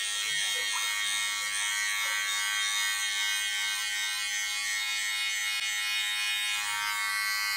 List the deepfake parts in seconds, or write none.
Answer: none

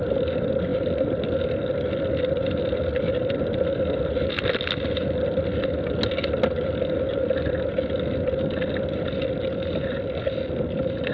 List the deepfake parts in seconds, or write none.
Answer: none

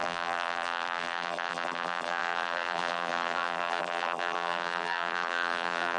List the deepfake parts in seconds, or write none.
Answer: 0.0-6.0 (vocoder, BigVGAN v2)

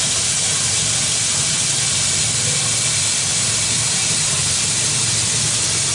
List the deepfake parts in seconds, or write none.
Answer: 3.3-4.8 (vocoder, BigVGAN v2)